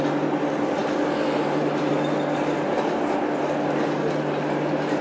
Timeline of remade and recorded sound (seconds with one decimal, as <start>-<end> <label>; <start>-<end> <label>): 0.0-5.0 recorded